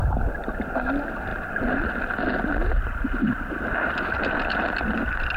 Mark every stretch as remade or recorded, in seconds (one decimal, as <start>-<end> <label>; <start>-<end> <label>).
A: 0.0-1.3 recorded; 1.3-2.5 remade; 2.5-5.4 recorded